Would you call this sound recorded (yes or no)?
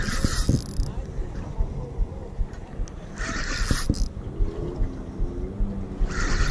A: yes